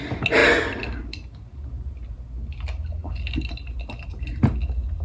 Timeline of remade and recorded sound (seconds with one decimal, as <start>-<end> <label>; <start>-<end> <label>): 0.0-5.0 recorded